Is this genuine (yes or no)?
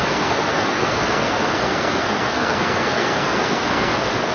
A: no